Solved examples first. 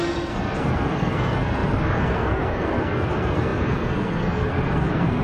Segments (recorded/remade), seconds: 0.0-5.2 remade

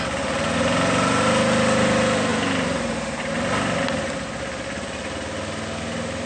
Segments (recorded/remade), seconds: 0.0-2.3 recorded; 2.3-2.9 remade; 2.9-6.3 recorded